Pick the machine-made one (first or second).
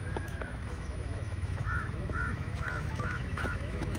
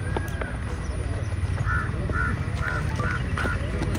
first